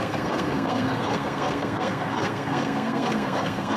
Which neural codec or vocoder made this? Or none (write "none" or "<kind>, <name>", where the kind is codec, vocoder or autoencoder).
codec, SNAC